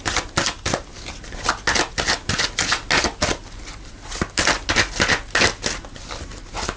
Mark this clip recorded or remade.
recorded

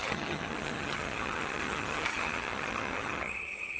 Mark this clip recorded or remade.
remade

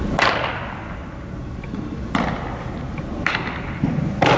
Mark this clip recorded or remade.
recorded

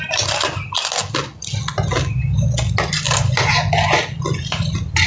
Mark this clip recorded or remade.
recorded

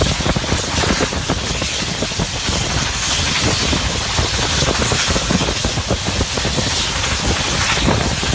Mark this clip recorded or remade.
recorded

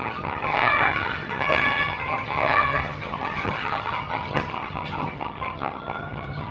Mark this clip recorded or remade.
remade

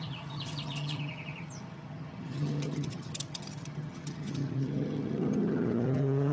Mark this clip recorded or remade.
remade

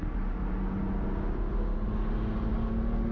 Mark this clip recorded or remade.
recorded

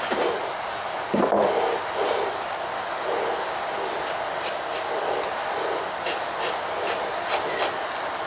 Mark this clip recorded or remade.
recorded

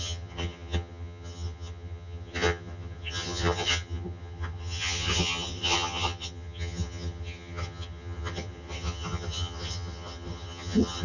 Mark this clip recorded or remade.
remade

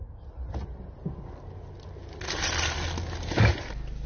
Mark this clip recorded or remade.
recorded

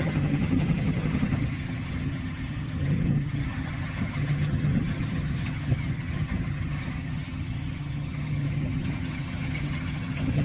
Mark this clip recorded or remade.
remade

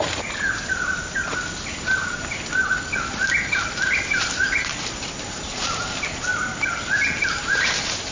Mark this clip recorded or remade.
recorded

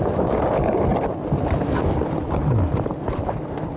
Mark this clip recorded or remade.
recorded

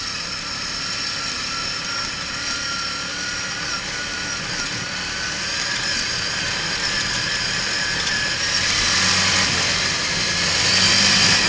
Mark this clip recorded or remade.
recorded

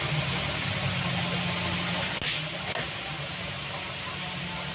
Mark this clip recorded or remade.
recorded